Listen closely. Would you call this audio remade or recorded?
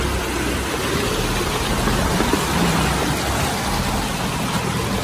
recorded